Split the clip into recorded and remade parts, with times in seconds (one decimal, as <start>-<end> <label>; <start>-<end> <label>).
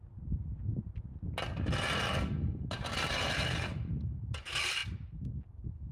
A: 0.0-5.9 recorded